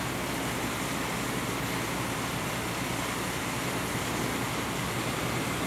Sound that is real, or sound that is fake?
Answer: real